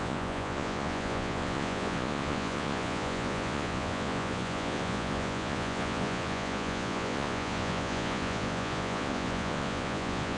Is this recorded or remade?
remade